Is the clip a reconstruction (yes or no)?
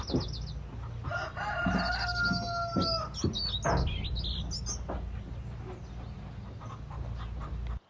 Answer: no